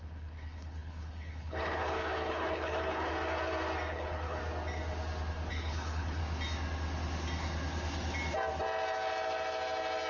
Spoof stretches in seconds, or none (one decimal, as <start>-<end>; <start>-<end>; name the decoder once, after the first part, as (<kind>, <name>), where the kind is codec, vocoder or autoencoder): 0.0-3.1 (codec, HILCodec); 3.9-4.4; 5.5-6.2